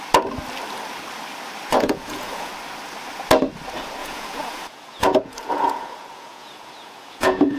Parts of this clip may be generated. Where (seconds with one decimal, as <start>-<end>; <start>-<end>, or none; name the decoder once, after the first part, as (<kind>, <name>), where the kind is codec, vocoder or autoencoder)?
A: 1.7-2.5 (vocoder, Vocos); 4.0-7.6